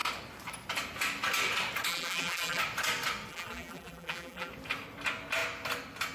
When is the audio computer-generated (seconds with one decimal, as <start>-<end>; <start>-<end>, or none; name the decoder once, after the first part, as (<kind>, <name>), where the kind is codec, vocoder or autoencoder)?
1.9-2.6 (vocoder, BigVGAN v2); 3.3-4.5